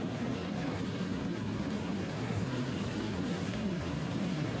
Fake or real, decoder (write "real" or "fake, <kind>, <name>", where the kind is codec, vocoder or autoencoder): fake, codec, SNAC